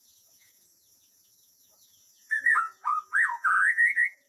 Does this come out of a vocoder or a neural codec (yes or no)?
yes